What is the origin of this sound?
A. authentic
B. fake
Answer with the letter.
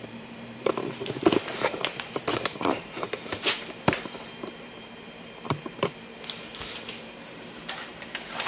B